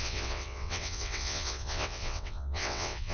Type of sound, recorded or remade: remade